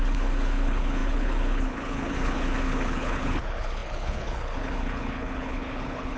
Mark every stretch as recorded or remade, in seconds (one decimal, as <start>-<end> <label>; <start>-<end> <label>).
0.0-6.2 remade